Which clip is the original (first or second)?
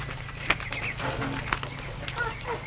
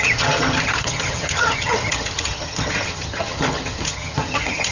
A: first